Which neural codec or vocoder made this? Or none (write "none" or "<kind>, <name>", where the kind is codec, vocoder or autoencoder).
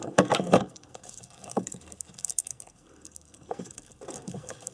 codec, SNAC